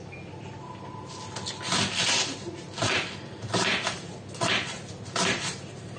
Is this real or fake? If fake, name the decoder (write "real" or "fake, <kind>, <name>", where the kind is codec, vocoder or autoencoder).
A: real